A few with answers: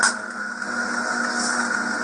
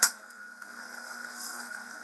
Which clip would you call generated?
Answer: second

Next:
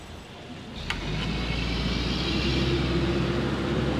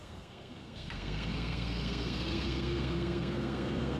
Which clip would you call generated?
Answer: second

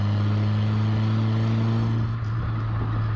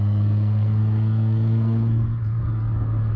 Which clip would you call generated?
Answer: second